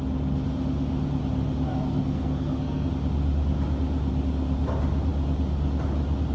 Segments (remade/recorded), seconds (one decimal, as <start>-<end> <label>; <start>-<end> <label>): 0.0-1.7 recorded; 1.7-2.9 remade; 2.9-6.3 recorded